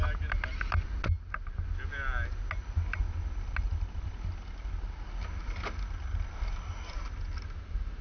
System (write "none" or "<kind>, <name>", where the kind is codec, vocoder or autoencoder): none